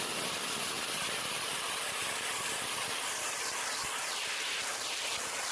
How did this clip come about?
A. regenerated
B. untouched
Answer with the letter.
B